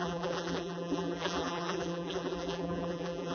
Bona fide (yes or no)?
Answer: no